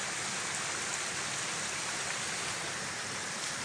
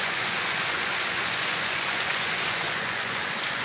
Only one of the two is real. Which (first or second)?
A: first